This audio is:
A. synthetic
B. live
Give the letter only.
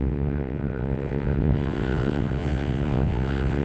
A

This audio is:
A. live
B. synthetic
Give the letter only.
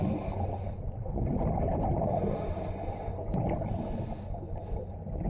A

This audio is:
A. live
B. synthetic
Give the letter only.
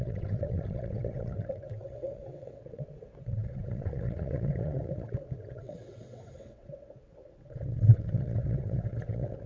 B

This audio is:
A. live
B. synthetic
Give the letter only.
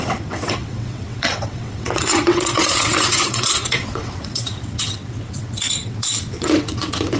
B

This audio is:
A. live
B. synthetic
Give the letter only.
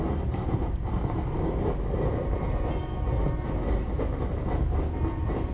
A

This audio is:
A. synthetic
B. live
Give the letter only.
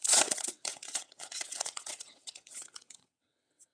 A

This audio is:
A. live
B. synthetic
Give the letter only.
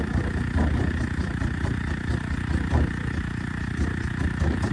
A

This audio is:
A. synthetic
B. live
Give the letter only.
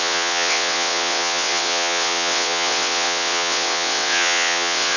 A